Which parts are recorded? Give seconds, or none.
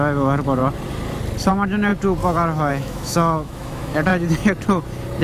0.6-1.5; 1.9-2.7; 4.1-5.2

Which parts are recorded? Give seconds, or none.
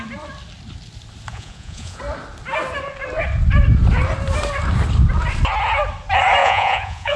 0.0-1.3; 2.0-6.4